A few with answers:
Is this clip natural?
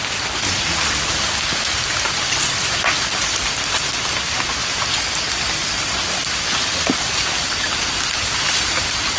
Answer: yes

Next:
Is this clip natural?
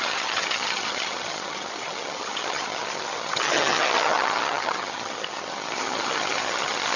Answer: no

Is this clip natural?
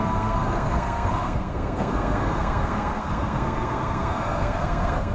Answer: no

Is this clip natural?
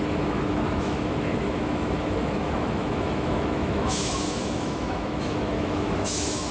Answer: no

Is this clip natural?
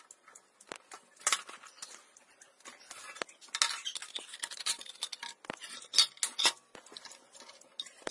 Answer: yes